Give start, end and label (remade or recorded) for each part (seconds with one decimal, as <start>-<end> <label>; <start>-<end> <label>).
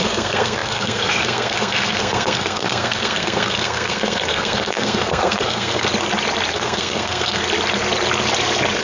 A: 0.0-5.9 remade; 5.9-6.5 recorded; 6.5-7.4 remade; 7.4-8.8 recorded